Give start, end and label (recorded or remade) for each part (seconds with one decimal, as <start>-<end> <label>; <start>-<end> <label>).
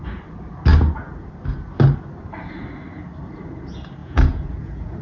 0.0-4.0 recorded; 4.0-5.0 remade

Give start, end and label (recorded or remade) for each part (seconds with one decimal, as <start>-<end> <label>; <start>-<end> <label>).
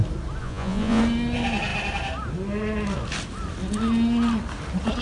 0.0-0.4 recorded; 0.4-1.0 remade; 1.0-5.0 recorded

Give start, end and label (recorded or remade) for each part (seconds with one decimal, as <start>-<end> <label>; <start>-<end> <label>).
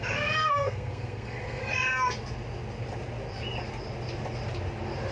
0.0-1.6 remade; 1.6-5.1 recorded